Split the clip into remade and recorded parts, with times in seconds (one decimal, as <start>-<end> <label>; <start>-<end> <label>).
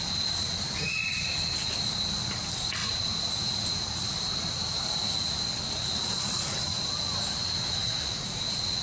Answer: 0.0-7.8 recorded; 7.8-8.8 remade